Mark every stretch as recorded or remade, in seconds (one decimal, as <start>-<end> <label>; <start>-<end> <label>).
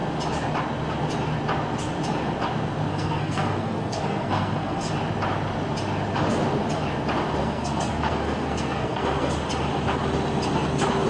0.0-2.9 recorded; 2.9-4.9 remade; 4.9-7.4 recorded; 7.4-9.3 remade; 9.3-11.1 recorded